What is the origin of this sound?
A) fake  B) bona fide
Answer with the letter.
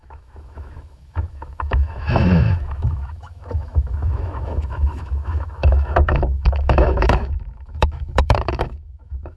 A